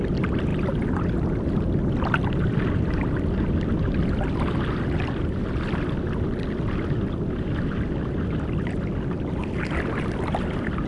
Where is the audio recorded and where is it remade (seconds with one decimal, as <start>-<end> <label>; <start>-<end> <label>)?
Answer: 0.0-10.9 recorded